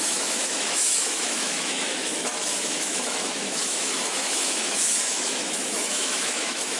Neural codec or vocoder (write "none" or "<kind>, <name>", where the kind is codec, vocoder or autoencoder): autoencoder, DAC-VAE